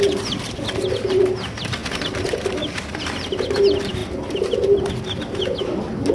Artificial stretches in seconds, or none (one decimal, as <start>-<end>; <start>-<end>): 1.8-3.0